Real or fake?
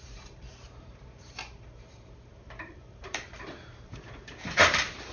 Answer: fake